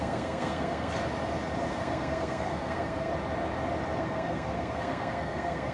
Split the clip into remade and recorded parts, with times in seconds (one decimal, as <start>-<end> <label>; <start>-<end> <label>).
0.0-0.9 remade; 0.9-1.7 recorded; 1.7-3.1 remade; 3.1-4.0 recorded; 4.0-5.7 remade